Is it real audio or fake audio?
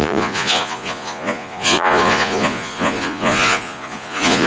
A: fake